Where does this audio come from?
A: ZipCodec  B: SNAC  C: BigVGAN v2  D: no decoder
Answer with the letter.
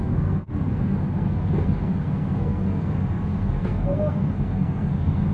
B